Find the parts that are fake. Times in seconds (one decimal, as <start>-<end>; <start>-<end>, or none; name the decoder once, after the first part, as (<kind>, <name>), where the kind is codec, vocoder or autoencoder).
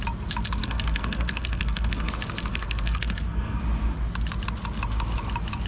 0.6-2.1 (codec, SNAC); 2.5-3.6